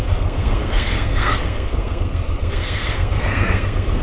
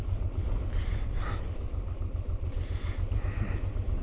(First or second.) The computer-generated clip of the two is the first